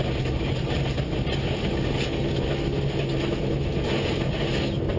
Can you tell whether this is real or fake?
real